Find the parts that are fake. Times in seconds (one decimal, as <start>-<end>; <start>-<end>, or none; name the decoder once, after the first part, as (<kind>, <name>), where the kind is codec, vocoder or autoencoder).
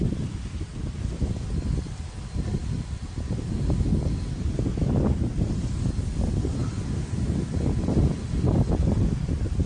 none